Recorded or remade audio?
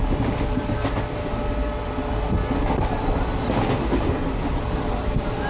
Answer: recorded